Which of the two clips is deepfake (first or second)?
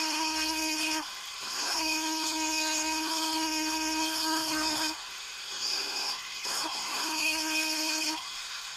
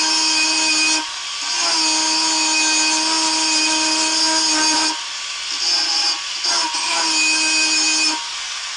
first